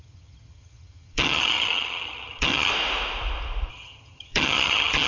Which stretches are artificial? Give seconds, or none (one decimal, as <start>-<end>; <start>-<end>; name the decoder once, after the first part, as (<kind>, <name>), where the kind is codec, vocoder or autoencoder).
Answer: 0.0-2.7 (vocoder, HiFi-GAN); 3.7-5.1